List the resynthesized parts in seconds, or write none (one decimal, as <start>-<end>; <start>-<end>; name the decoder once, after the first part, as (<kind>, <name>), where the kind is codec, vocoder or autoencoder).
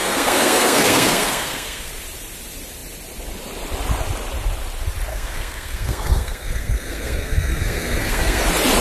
0.0-1.9 (codec, SNAC); 5.1-8.4